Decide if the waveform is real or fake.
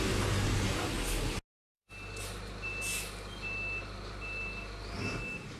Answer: real